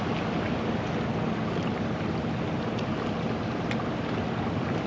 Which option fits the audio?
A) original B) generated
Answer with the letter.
A